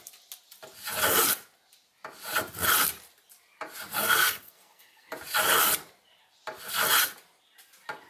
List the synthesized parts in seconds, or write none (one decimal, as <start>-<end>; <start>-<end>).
3.9-5.1